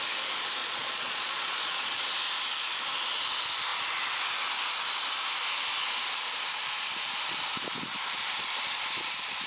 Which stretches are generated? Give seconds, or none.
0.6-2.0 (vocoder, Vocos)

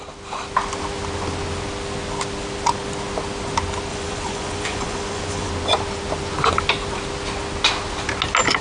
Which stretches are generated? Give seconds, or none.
3.9-5.5 (vocoder, Vocos)

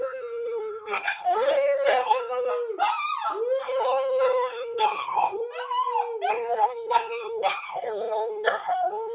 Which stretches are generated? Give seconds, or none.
0.0-2.5 (codec, SNAC); 3.6-5.4; 6.3-9.1